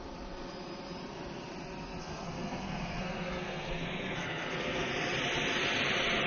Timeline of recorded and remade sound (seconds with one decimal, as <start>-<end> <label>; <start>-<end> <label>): 0.0-2.0 recorded; 2.0-4.9 remade; 4.9-6.3 recorded